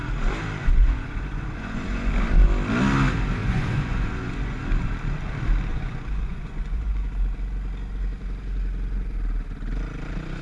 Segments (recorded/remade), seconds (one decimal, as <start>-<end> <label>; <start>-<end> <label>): 0.0-0.6 recorded; 0.6-2.1 remade; 2.1-3.4 recorded; 3.4-4.6 remade; 4.6-5.7 recorded; 5.7-7.1 remade; 7.1-10.4 recorded